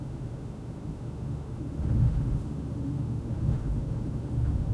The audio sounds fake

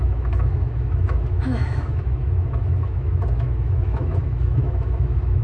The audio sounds fake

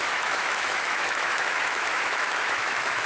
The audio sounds fake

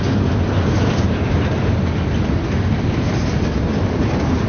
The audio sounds real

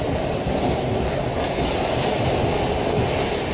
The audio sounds real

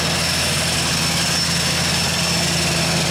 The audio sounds real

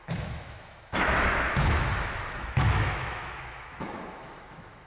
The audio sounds fake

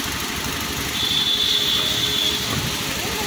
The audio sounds real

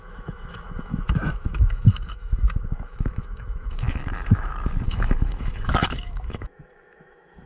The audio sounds fake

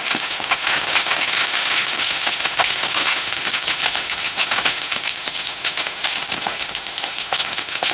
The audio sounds fake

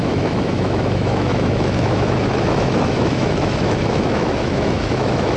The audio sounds fake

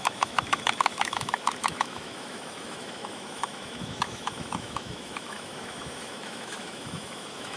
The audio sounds fake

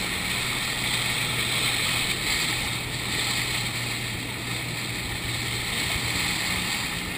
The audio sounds real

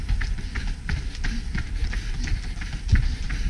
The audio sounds real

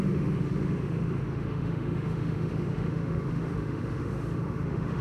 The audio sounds fake